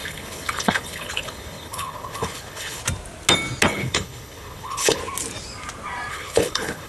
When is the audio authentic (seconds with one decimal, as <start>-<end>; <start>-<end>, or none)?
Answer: 2.8-3.7; 5.0-6.1